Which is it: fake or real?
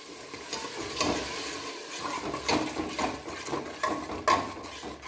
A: real